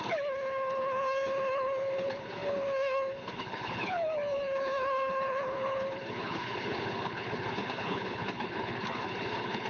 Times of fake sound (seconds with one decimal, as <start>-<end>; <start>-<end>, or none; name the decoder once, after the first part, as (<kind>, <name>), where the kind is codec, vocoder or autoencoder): 0.0-9.7 (codec, HILCodec)